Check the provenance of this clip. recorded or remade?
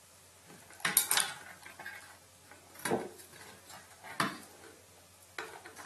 recorded